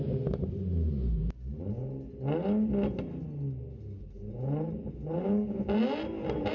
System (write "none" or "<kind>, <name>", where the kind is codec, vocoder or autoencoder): none